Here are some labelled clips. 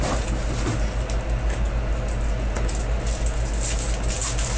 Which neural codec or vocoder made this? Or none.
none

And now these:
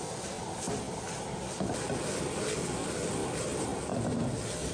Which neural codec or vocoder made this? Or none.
none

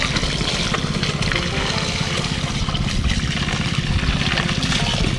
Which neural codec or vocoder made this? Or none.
none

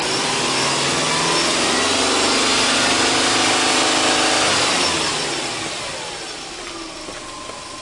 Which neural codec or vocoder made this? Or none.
none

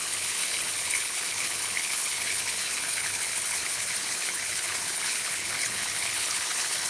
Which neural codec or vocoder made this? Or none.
codec, HILCodec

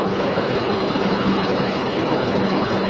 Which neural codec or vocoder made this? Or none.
codec, HILCodec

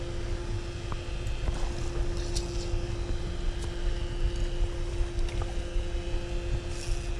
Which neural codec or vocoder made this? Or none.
none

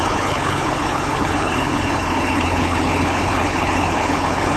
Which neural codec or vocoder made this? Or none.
codec, HILCodec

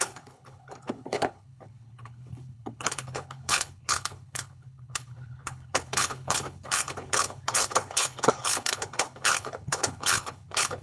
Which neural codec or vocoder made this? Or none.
codec, HILCodec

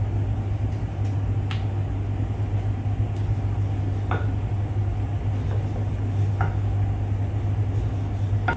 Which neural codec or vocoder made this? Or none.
none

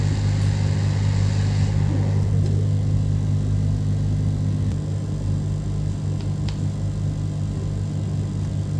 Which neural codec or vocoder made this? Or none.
none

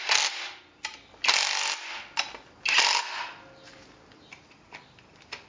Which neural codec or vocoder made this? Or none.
none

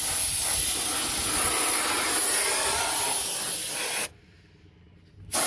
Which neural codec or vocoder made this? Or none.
none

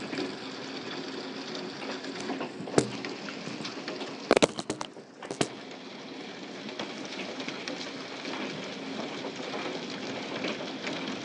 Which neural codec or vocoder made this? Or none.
none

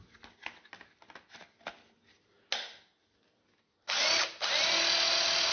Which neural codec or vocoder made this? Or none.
none